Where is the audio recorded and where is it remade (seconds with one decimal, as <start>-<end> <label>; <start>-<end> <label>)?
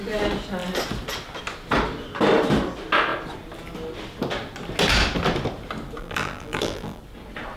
0.0-6.0 recorded; 6.0-7.0 remade; 7.0-7.6 recorded